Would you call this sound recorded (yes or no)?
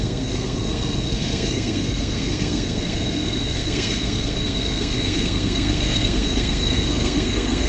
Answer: no